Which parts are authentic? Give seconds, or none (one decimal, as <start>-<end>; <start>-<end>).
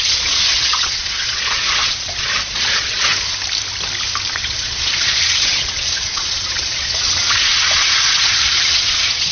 3.1-4.3